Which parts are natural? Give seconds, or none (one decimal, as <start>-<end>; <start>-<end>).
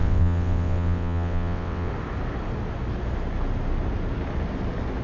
1.9-5.0